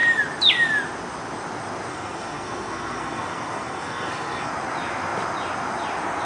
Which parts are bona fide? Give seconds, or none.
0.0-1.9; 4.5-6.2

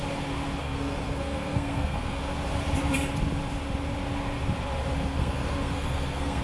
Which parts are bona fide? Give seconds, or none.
0.0-0.6; 2.2-5.2

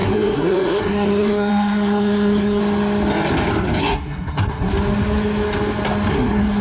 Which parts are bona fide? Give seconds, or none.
2.6-3.8; 4.7-6.1

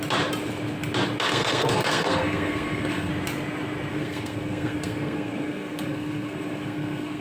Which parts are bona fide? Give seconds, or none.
0.0-1.3; 3.1-3.9

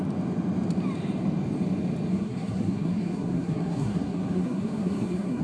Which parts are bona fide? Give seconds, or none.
0.0-2.1

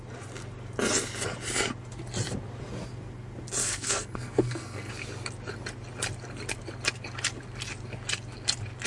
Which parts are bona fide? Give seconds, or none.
0.0-3.6; 4.9-8.9